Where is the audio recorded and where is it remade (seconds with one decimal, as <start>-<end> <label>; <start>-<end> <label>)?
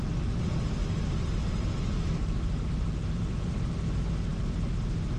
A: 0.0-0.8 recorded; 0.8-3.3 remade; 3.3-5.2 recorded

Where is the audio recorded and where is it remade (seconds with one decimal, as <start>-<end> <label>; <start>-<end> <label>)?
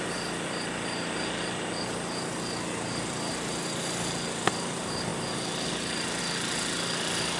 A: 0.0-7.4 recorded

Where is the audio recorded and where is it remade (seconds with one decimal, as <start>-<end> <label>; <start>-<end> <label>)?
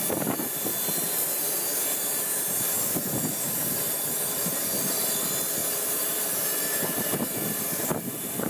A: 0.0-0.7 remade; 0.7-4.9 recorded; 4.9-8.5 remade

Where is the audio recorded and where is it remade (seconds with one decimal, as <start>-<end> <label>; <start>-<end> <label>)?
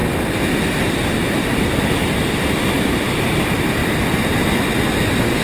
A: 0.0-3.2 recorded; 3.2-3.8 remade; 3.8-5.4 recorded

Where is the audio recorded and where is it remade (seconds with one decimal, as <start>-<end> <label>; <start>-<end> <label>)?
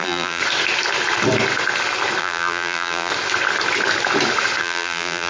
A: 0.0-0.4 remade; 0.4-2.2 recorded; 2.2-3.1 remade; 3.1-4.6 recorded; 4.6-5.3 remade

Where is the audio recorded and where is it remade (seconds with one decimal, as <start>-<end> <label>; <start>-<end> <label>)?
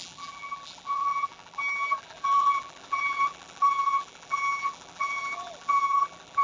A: 0.0-6.4 remade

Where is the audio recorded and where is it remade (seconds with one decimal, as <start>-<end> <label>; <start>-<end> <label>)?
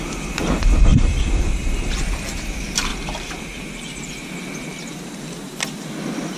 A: 0.0-0.9 recorded; 0.9-1.9 remade; 1.9-2.9 recorded; 2.9-4.1 remade; 4.1-6.4 recorded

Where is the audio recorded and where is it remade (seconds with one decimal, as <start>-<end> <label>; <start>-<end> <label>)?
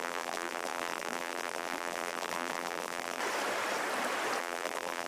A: 0.0-3.2 remade; 3.2-4.4 recorded; 4.4-5.1 remade